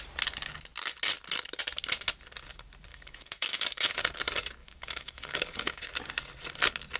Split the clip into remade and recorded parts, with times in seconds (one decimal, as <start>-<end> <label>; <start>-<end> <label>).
0.0-2.9 recorded; 2.9-3.9 remade; 3.9-4.6 recorded; 4.6-5.9 remade; 5.9-7.0 recorded